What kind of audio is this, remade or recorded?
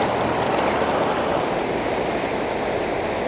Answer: recorded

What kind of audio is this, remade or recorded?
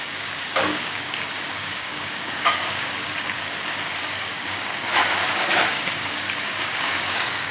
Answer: remade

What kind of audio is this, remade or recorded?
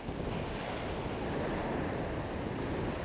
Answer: recorded